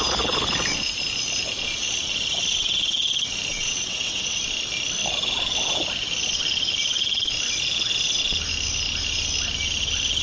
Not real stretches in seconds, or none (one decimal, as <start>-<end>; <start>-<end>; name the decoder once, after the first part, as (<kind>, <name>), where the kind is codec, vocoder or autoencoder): 3.5-4.4 (vocoder, WaveNeXt)